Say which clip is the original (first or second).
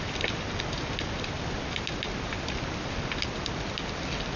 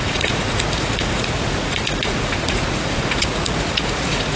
first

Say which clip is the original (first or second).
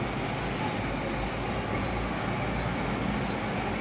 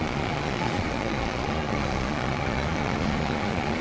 first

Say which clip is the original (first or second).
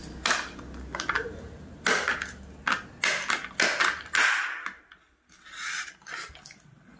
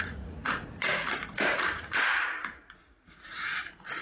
first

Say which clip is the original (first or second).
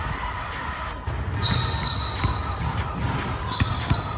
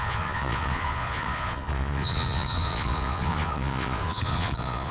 first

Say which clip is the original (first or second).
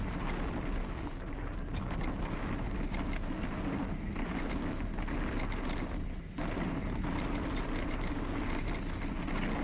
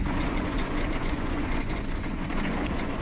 first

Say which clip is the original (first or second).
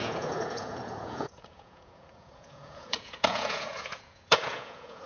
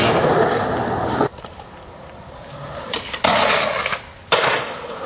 second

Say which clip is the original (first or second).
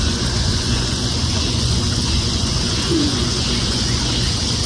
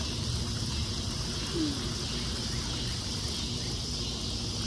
second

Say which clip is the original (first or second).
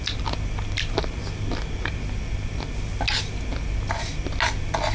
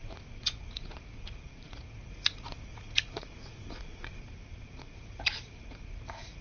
first